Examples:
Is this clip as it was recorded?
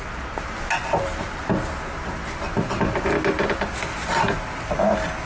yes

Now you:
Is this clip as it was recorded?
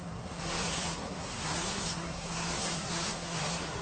no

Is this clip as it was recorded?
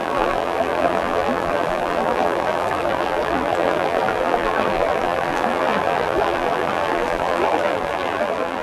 no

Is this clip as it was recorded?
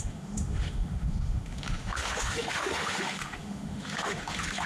no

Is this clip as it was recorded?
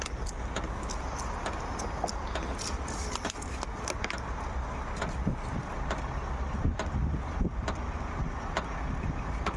yes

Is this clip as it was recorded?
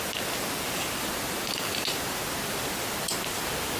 yes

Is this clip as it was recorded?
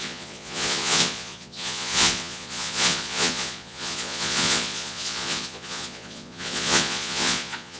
no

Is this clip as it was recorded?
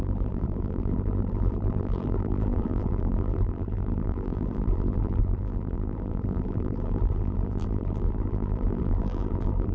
no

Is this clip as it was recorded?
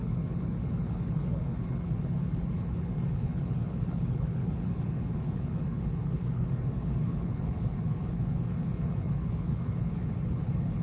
no